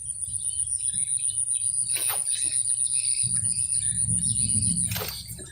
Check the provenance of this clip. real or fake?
real